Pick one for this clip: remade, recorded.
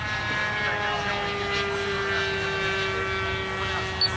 recorded